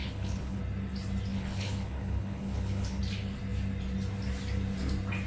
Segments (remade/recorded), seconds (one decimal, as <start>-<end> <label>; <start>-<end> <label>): 0.0-0.6 remade; 0.6-1.3 recorded; 1.3-3.0 remade; 3.0-5.3 recorded